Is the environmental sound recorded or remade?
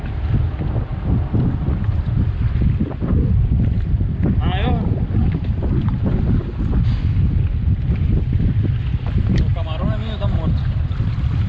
recorded